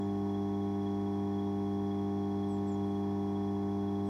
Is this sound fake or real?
real